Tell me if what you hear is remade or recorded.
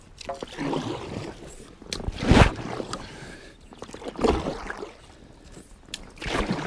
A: recorded